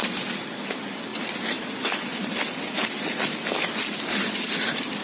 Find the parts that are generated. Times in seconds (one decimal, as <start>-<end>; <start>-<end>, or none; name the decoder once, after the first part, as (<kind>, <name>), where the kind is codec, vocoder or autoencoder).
0.0-0.7 (vocoder, BigVGAN v2); 1.1-4.1